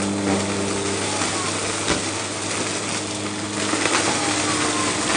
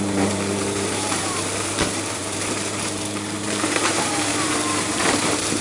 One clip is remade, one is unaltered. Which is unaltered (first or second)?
first